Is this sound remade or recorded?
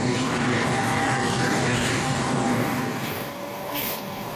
remade